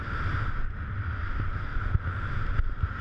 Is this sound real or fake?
real